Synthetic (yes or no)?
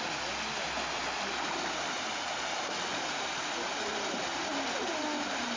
no